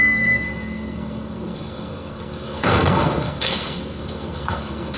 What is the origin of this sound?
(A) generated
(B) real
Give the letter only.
A